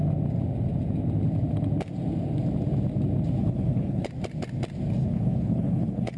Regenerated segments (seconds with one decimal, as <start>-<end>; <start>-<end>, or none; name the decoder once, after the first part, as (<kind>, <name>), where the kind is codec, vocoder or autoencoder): 3.4-4.1 (codec, HILCodec); 5.0-6.2